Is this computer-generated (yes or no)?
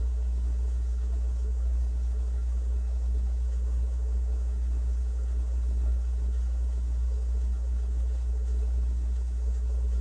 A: yes